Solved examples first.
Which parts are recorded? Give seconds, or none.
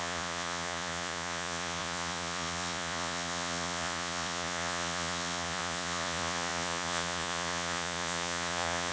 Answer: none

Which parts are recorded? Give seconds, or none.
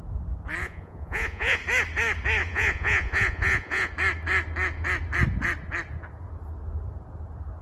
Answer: 0.0-0.6; 1.6-2.4; 3.9-7.6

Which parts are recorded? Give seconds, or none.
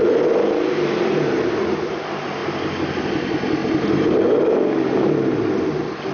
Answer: 0.0-6.1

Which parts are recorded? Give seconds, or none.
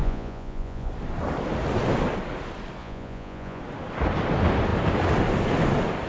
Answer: 0.9-2.8; 3.6-6.1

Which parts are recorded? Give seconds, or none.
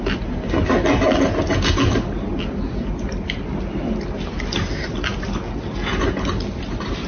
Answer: 0.0-7.1